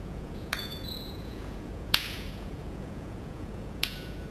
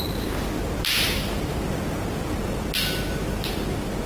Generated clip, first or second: first